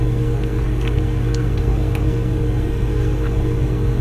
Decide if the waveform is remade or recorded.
remade